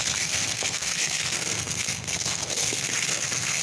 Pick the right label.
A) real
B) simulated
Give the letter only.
B